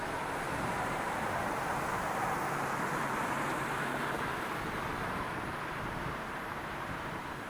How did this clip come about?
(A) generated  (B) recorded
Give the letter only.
A